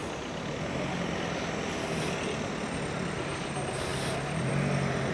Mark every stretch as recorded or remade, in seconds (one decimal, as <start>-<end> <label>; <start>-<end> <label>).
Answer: 0.0-5.1 recorded